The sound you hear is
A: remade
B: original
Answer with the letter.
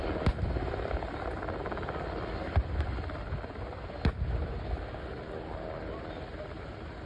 B